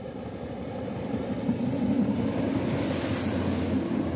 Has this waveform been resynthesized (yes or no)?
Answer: no